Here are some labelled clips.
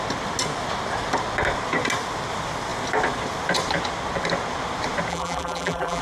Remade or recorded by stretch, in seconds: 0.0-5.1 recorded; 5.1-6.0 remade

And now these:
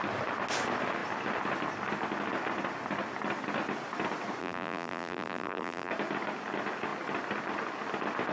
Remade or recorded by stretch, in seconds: 0.0-4.4 recorded; 4.4-5.9 remade; 5.9-8.3 recorded

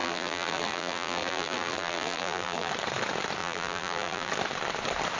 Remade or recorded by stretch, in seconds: 0.0-2.7 remade; 2.7-3.4 recorded; 3.4-4.3 remade; 4.3-5.2 recorded

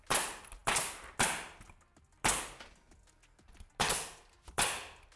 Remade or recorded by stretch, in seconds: 0.0-5.2 recorded

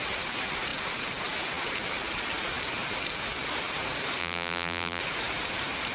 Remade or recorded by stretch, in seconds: 0.0-4.2 recorded; 4.2-5.0 remade; 5.0-5.9 recorded